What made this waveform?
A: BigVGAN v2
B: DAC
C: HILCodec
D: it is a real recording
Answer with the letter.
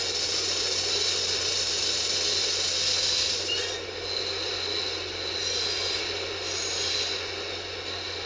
D